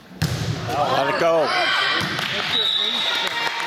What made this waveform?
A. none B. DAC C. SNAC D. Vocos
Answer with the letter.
A